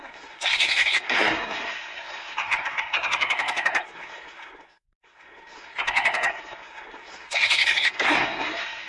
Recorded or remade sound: remade